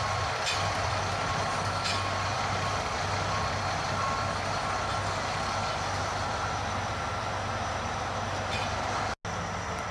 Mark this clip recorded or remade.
recorded